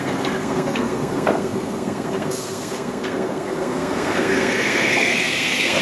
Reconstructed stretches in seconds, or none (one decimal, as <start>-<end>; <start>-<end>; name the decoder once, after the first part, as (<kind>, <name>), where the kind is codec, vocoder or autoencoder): 0.0-5.8 (codec, SNAC)